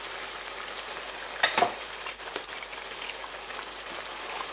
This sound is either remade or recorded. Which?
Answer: recorded